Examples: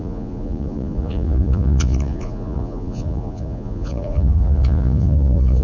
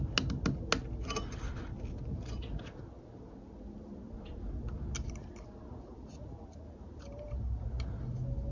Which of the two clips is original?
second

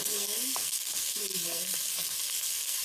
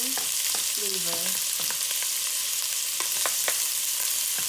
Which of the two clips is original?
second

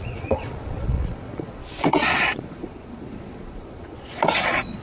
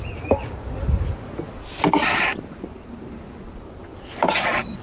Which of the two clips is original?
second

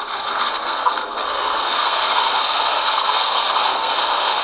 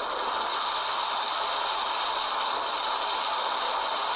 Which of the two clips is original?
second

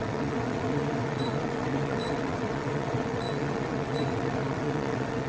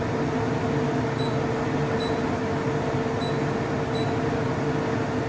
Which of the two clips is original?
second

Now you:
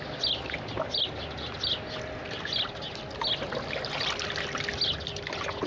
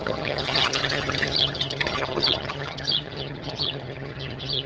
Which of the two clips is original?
first